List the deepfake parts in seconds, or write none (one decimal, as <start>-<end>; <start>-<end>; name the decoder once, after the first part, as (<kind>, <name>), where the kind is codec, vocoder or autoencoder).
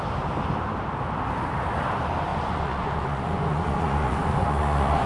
2.3-5.1 (vocoder, Vocos)